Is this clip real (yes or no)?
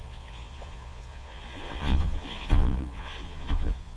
no